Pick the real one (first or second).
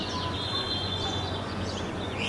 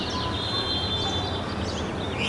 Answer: second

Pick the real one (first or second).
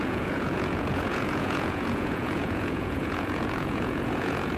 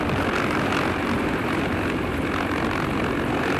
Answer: second